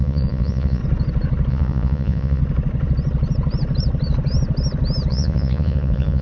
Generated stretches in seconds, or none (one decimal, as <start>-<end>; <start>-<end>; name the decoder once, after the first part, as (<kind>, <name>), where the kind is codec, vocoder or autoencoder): 0.0-0.8 (vocoder, Vocos); 1.5-2.4; 5.1-6.2